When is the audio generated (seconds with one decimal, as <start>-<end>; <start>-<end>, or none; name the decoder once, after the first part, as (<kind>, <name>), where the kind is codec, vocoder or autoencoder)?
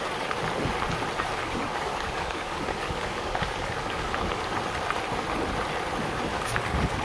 1.4-4.4 (codec, DAC); 6.3-7.0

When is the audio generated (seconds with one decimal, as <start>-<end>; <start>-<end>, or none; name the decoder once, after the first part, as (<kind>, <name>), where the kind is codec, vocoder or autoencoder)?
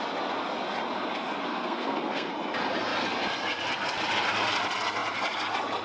1.5-2.3 (codec, SNAC)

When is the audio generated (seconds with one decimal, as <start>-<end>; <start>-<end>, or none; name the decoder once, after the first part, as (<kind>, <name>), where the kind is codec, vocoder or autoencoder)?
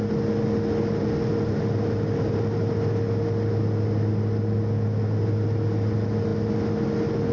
none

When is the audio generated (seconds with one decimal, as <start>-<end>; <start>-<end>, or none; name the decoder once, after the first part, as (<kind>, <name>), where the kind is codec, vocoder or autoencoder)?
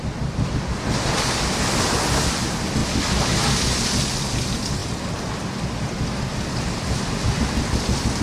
none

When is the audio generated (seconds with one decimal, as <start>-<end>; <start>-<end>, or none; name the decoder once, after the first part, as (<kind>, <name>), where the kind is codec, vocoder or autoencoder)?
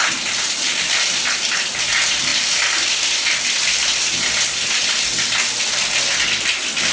none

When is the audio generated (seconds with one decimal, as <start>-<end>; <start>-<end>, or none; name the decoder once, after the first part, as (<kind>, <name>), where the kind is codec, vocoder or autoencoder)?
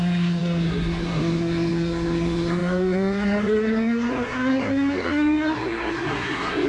0.0-6.7 (codec, SNAC)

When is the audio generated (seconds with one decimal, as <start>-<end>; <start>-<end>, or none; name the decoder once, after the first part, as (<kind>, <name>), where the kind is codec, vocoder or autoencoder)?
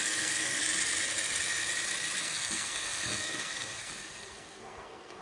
0.0-0.6 (codec, SNAC); 2.2-5.2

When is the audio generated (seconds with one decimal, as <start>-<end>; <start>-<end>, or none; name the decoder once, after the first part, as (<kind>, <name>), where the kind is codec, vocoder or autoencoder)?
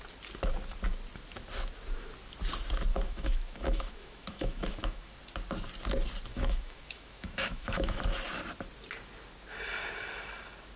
2.9-5.1 (autoencoder, DAC-VAE); 6.3-8.0